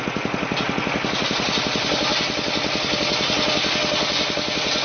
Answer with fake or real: real